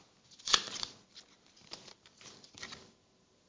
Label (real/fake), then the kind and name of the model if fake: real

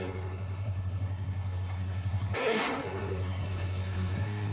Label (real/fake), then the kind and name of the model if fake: fake, codec, SNAC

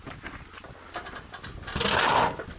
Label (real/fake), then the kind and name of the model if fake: real